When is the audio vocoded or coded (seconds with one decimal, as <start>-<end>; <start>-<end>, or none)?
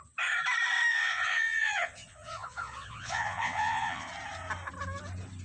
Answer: 0.9-4.1